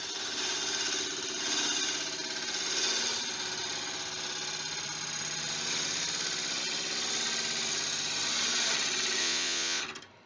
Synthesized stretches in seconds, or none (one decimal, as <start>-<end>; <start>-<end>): 9.2-9.8